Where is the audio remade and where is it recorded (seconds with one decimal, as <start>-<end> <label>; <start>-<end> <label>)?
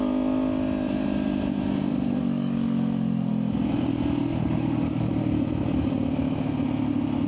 0.0-1.9 recorded; 1.9-3.3 remade; 3.3-4.2 recorded; 4.2-5.1 remade; 5.1-7.3 recorded